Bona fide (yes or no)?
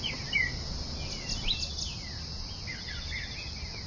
yes